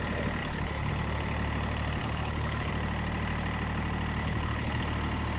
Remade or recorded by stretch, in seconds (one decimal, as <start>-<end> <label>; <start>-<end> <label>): 0.0-0.4 recorded; 0.4-0.9 remade; 0.9-2.0 recorded; 2.0-2.7 remade; 2.7-4.2 recorded; 4.2-4.8 remade; 4.8-5.4 recorded